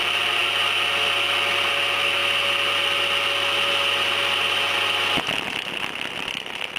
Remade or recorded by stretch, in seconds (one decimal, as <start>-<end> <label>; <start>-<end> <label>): 0.0-6.8 recorded